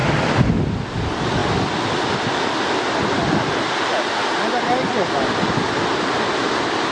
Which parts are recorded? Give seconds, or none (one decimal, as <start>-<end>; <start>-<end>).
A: 0.0-6.9